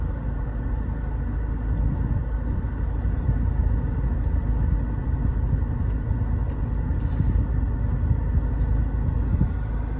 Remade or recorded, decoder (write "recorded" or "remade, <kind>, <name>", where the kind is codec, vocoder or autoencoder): recorded